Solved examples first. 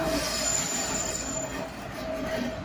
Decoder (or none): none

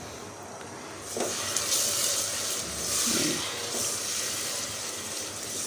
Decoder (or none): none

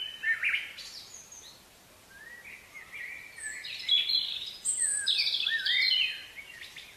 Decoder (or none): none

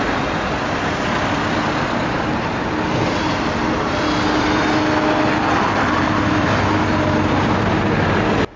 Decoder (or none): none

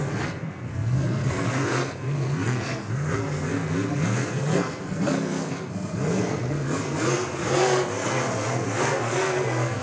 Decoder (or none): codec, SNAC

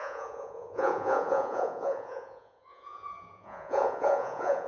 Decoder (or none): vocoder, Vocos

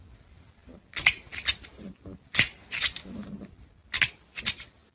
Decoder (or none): none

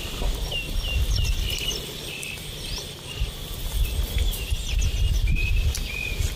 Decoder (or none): none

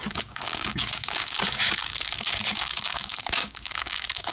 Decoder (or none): codec, DAC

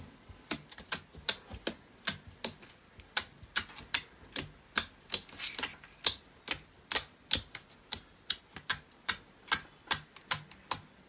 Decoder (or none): none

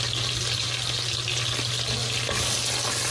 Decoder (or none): none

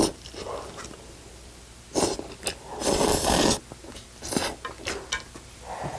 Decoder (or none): none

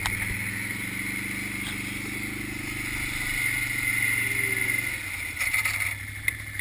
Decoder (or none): none